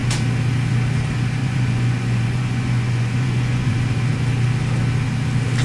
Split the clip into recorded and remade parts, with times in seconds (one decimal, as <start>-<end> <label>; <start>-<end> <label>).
0.0-1.4 recorded; 1.4-3.7 remade; 3.7-5.6 recorded